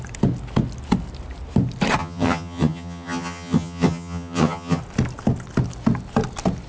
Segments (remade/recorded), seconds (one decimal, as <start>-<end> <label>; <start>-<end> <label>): 0.0-2.0 recorded; 2.0-4.8 remade; 4.8-6.7 recorded